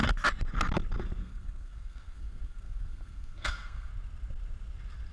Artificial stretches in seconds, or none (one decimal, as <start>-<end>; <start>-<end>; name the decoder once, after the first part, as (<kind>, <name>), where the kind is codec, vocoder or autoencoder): 1.2-3.9 (codec, SNAC)